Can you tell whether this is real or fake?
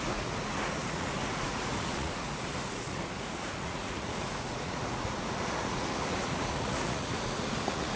fake